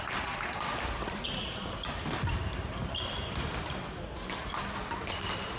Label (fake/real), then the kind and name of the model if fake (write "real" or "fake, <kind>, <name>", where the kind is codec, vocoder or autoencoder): real